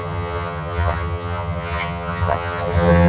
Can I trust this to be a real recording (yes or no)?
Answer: no